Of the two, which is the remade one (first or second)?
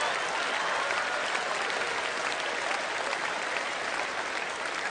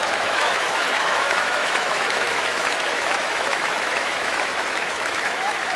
second